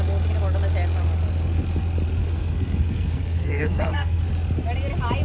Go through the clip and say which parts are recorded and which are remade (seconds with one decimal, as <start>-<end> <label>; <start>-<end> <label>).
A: 0.0-2.2 recorded; 2.2-4.2 remade; 4.2-5.2 recorded